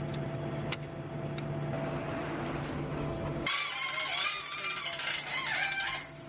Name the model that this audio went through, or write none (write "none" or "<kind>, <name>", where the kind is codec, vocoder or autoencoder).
none